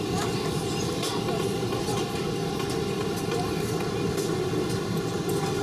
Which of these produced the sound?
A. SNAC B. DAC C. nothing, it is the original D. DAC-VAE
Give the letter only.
C